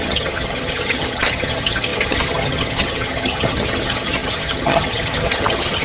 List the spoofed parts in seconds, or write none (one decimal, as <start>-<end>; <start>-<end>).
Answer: 0.0-5.8